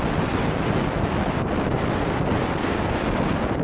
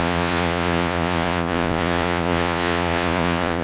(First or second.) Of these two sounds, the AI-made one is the second